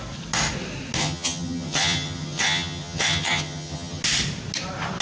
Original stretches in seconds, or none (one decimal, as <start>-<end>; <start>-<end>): 0.0-1.0; 4.0-5.0